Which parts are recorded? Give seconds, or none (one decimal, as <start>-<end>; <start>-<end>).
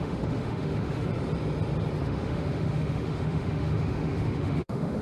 1.1-2.0